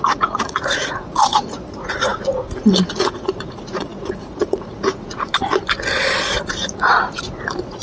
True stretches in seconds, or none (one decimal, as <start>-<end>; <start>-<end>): 2.3-2.9; 5.3-6.4

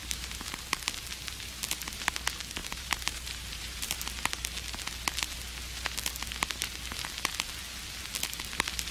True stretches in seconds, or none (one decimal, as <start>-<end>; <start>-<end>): 0.6-2.6; 4.1-8.9